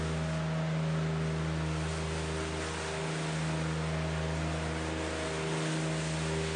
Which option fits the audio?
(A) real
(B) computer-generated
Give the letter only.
A